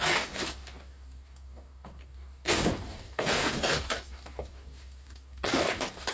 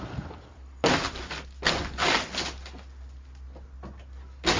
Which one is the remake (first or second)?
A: first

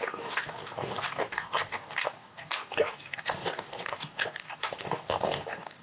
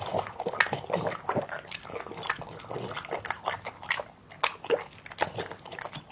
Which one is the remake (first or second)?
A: first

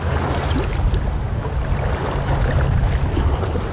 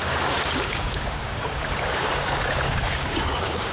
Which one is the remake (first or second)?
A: second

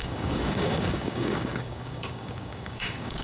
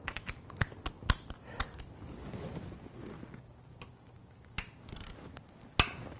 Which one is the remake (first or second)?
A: first